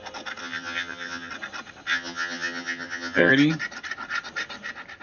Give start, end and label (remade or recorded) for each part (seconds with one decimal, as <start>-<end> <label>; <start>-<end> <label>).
0.0-0.4 recorded; 0.4-1.3 remade; 1.3-1.9 recorded; 1.9-3.3 remade; 3.3-5.0 recorded